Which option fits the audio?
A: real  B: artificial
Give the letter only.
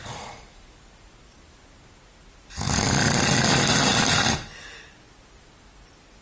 A